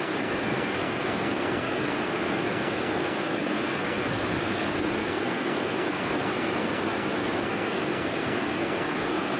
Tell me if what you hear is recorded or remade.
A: remade